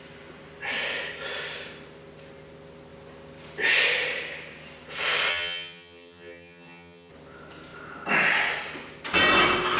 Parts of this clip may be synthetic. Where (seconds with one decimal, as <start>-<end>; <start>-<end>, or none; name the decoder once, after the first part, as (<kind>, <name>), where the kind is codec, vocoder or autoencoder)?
5.3-7.1 (vocoder, HiFi-GAN)